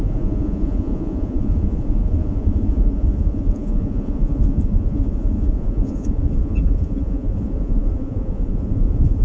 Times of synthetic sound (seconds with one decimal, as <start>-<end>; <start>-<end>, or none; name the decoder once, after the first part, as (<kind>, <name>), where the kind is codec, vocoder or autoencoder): 0.0-9.2 (vocoder, Vocos)